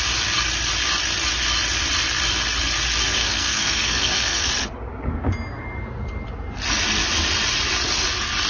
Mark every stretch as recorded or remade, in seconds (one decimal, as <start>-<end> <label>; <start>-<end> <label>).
0.0-3.2 recorded; 3.2-4.5 remade; 4.5-8.5 recorded